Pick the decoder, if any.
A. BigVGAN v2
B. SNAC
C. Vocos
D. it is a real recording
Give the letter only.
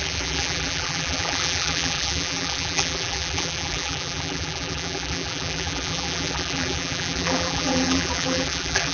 A